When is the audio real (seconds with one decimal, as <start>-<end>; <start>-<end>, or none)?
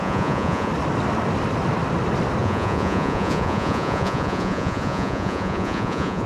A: 0.7-2.4